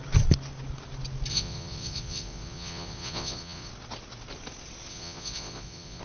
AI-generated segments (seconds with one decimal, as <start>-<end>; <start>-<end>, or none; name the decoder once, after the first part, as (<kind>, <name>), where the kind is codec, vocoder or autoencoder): 1.3-3.7 (vocoder, Vocos); 4.9-6.0